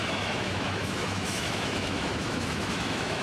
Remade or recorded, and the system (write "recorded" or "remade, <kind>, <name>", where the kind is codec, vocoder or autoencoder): remade, autoencoder, DAC-VAE